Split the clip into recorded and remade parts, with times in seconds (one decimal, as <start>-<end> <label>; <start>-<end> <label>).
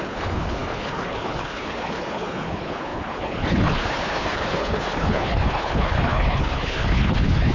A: 0.0-7.5 remade